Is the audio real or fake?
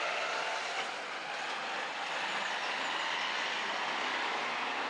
real